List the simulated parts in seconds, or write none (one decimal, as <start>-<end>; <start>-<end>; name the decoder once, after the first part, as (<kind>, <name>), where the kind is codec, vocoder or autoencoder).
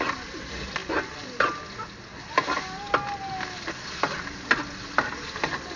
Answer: none